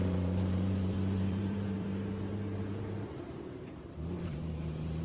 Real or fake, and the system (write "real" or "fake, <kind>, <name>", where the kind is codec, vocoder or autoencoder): fake, vocoder, BigVGAN v2